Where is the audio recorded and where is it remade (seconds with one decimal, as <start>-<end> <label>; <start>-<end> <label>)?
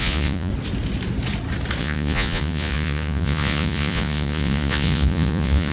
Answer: 0.0-0.5 remade; 0.5-1.8 recorded; 1.8-5.7 remade